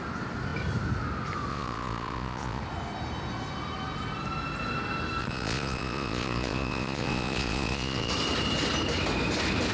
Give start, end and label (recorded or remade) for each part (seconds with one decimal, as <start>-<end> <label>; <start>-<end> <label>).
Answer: 0.0-1.5 recorded; 1.5-2.6 remade; 2.6-5.2 recorded; 5.2-8.1 remade; 8.1-9.7 recorded